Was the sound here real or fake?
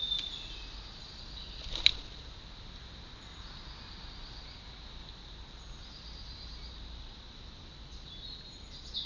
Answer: real